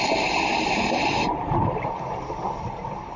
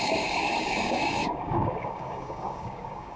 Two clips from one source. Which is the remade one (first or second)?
second